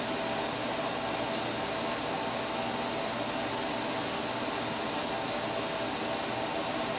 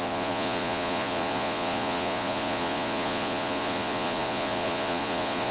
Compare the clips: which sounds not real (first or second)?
second